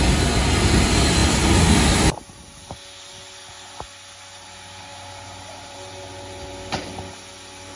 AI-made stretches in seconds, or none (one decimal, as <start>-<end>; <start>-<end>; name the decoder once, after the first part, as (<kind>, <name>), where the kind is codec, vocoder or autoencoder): none